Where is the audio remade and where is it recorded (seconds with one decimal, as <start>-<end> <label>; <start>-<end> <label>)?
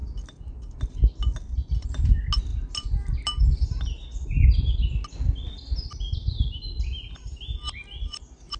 0.0-8.6 recorded